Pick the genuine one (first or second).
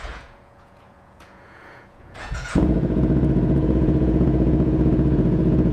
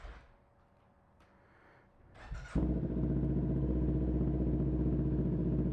second